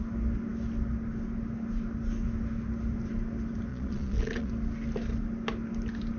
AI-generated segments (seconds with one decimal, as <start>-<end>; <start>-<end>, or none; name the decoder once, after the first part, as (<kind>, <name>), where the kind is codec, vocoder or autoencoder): 3.7-4.5 (vocoder, Vocos)